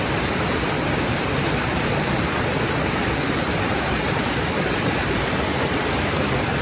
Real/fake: fake